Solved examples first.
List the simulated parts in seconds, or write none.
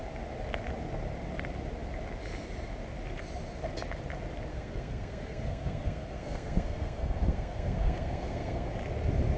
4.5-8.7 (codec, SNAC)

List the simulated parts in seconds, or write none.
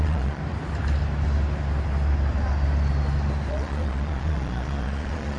0.0-0.4 (vocoder, Vocos); 3.5-5.4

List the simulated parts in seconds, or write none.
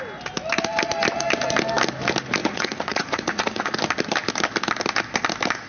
2.4-3.8 (vocoder, Vocos)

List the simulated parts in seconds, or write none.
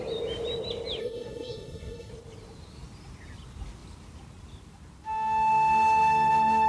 1.0-2.1 (codec, SNAC)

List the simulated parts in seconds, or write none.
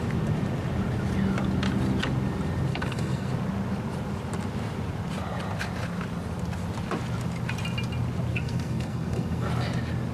2.7-3.3 (codec, SNAC); 8.3-9.5